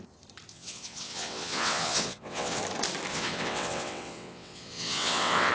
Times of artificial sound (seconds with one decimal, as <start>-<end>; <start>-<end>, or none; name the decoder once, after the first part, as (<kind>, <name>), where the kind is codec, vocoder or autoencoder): 0.5-2.6 (vocoder, WaveNeXt); 3.1-5.5